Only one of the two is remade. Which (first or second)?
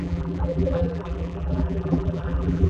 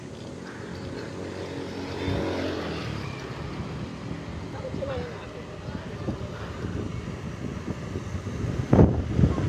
first